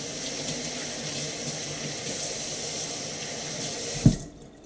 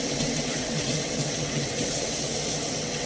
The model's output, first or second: second